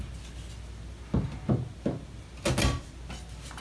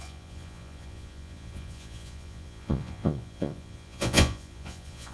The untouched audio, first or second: first